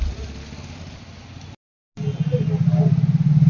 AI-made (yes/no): no